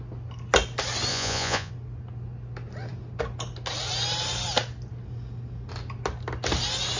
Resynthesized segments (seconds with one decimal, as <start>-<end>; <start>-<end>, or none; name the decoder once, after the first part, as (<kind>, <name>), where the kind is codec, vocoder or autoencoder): 1.1-1.7 (vocoder, Vocos)